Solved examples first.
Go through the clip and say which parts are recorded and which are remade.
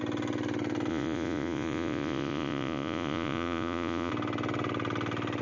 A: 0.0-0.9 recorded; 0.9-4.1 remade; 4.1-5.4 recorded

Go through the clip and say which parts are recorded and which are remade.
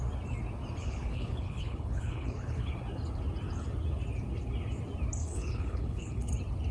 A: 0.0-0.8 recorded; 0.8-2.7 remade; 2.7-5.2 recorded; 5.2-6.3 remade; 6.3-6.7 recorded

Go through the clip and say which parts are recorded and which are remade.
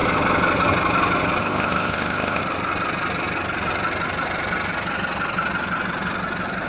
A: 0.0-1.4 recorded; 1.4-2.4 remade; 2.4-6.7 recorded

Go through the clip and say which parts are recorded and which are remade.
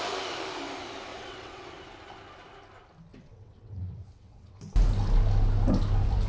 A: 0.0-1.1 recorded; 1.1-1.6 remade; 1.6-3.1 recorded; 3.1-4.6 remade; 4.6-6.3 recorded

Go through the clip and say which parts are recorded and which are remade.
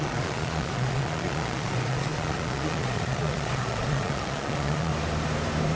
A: 0.0-4.9 remade; 4.9-5.8 recorded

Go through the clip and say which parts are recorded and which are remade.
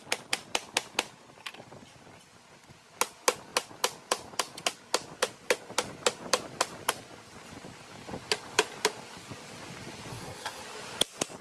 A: 0.0-10.1 recorded; 10.1-10.6 remade; 10.6-11.4 recorded